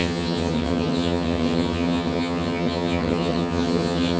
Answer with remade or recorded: remade